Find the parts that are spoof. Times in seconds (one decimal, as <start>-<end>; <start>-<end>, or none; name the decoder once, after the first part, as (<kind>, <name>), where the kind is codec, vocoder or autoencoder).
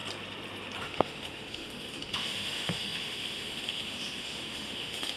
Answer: 0.8-5.2 (autoencoder, DAC-VAE)